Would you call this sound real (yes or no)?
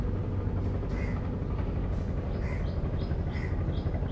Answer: yes